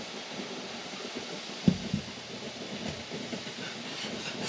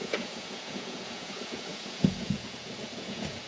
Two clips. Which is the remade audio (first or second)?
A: second